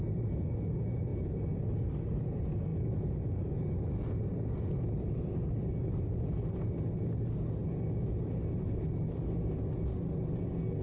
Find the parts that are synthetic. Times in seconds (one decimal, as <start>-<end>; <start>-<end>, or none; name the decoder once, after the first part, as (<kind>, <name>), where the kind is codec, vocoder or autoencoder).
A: none